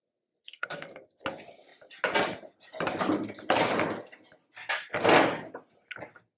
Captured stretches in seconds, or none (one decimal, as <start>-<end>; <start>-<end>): 0.0-0.4; 1.0-6.4